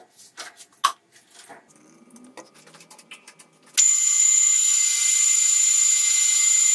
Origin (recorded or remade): recorded